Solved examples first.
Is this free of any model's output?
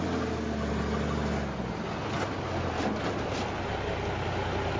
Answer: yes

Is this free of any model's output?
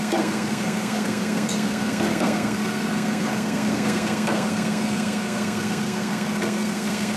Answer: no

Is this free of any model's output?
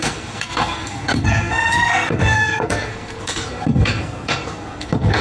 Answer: no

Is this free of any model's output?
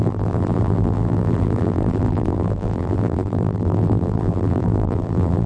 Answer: no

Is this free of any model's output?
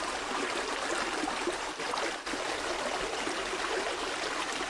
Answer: yes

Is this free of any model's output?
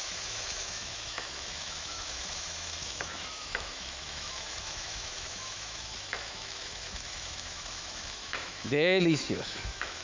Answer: no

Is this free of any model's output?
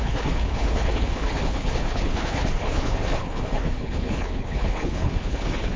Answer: no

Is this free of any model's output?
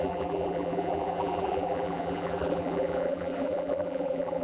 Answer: no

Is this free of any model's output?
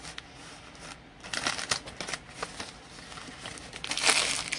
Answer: yes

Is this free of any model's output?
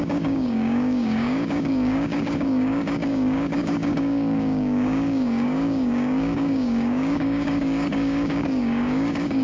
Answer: no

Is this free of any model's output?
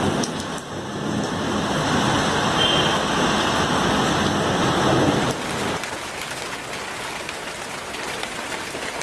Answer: yes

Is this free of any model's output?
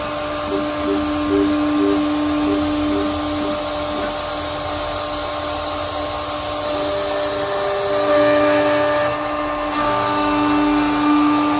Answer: yes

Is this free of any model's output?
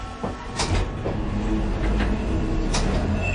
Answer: yes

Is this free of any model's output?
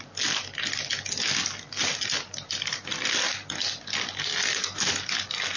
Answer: yes